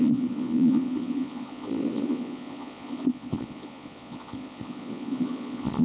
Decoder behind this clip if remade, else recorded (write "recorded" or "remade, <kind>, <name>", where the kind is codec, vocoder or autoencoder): remade, vocoder, Vocos